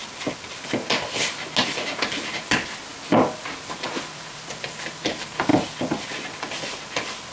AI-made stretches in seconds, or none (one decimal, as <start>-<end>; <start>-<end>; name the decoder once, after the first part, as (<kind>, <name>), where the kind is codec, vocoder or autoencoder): none